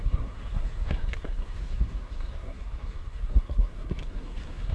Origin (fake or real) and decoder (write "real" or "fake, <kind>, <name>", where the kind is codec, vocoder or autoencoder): fake, codec, SNAC